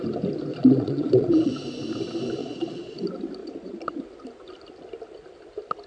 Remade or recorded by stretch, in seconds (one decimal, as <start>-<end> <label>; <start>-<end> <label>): 0.0-0.5 recorded; 0.5-1.5 remade; 1.5-2.4 recorded; 2.4-3.0 remade; 3.0-3.4 recorded; 3.4-4.0 remade; 4.0-5.9 recorded